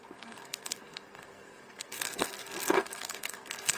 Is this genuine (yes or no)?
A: no